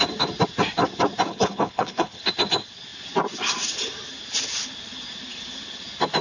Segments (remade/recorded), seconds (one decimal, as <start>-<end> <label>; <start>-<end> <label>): 0.0-1.3 recorded; 1.3-2.2 remade; 2.2-6.2 recorded